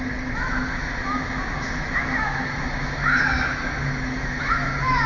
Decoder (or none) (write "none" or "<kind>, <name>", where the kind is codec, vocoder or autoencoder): autoencoder, DAC-VAE